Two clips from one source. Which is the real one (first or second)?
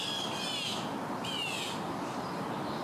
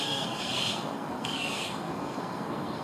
first